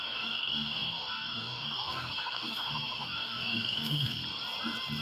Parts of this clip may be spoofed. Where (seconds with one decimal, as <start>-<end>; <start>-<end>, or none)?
0.0-4.2